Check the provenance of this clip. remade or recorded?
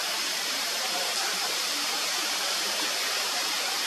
remade